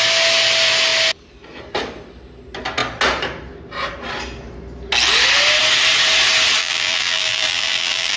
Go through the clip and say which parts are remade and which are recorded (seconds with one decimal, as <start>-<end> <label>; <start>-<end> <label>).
0.0-6.6 recorded; 6.6-8.2 remade